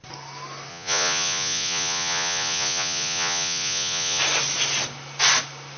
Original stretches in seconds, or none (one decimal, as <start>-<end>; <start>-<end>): 0.0-0.7; 4.2-5.8